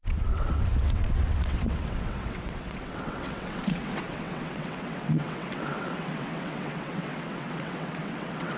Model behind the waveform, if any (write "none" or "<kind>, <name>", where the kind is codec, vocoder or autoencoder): vocoder, WaveNeXt